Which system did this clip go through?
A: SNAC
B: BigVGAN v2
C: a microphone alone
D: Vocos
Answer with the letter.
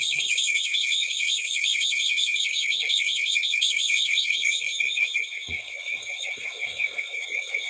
A